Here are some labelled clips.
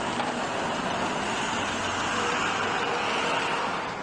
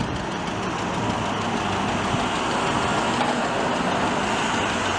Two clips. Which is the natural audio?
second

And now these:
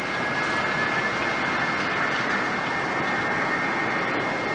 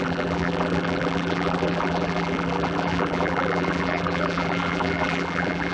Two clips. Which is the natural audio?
first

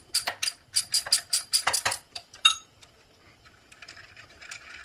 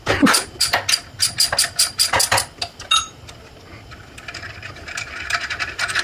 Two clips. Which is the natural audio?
second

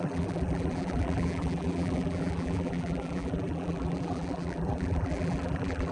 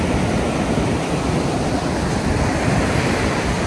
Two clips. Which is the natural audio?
second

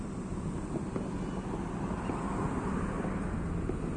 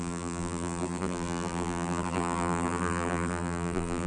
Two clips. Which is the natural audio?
first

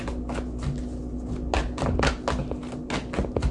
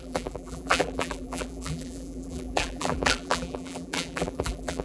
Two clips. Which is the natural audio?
first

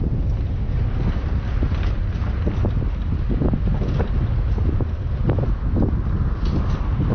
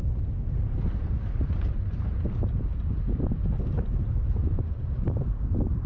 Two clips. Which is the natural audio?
first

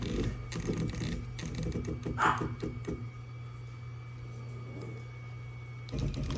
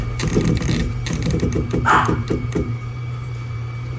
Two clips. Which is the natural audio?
first